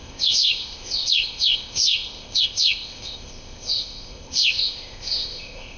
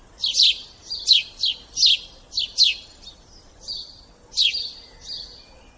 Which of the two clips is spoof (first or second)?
first